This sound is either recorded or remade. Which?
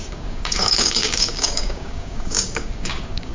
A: remade